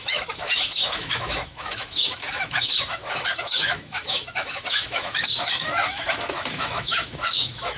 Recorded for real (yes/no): no